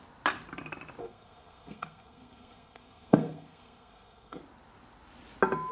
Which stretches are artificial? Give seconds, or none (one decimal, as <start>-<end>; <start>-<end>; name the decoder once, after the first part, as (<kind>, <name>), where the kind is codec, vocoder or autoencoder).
1.0-4.4 (codec, SNAC)